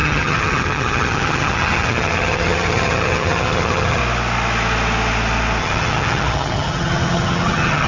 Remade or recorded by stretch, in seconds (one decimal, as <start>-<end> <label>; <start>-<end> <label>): 0.0-4.0 remade; 4.0-5.6 recorded; 5.6-7.9 remade